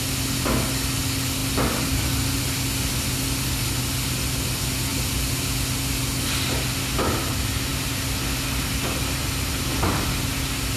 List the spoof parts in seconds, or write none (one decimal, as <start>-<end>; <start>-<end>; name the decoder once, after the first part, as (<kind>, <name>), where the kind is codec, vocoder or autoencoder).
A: none